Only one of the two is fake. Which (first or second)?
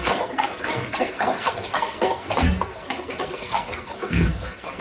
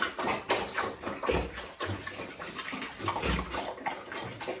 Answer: first